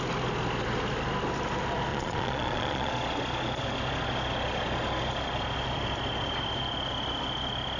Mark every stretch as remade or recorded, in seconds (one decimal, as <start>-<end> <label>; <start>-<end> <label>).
0.0-1.9 recorded; 1.9-2.9 remade; 2.9-7.8 recorded